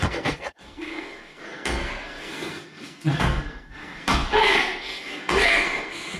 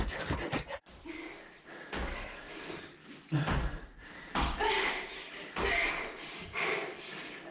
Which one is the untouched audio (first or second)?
second